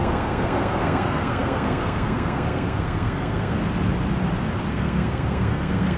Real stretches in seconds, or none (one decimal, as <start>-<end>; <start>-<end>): 3.6-4.7